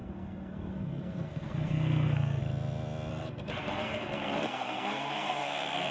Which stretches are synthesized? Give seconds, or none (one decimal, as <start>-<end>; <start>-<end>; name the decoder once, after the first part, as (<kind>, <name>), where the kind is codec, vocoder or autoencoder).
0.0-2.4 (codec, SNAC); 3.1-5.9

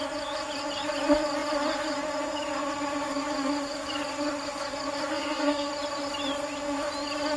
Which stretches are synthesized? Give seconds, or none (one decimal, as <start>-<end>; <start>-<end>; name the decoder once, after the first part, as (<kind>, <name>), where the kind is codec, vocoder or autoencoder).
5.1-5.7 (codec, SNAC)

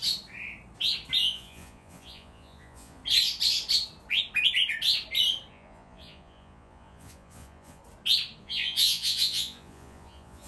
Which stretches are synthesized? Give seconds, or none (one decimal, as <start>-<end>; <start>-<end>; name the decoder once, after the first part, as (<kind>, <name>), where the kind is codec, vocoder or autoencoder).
1.2-3.0 (vocoder, Vocos); 5.5-7.8; 8.4-10.5

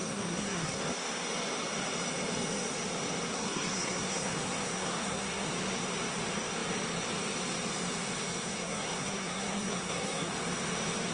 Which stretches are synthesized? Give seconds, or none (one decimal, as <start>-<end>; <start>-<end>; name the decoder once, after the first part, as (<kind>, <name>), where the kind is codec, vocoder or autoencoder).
0.0-0.8 (codec, SNAC); 3.3-5.5; 8.5-10.3

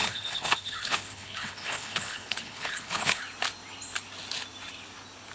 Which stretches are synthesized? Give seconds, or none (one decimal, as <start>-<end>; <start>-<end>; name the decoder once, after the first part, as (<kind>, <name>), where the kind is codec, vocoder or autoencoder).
0.0-3.2 (codec, HILCodec)